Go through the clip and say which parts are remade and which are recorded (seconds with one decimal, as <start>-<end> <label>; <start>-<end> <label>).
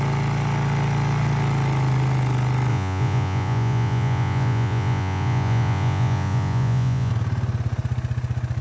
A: 0.0-2.7 recorded; 2.7-7.1 remade; 7.1-8.6 recorded